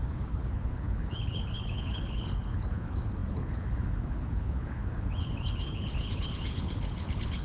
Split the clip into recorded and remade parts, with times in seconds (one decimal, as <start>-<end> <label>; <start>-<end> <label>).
0.0-7.4 remade